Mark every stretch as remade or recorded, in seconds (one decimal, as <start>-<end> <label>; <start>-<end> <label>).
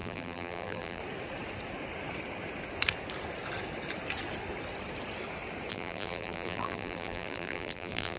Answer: 0.0-1.0 remade; 1.0-5.7 recorded; 5.7-8.2 remade